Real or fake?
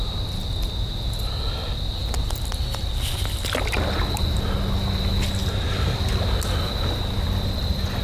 real